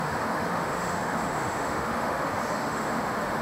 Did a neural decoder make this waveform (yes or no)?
yes